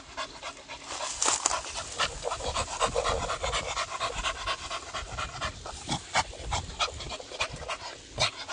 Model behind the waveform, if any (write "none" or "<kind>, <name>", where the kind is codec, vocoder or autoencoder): none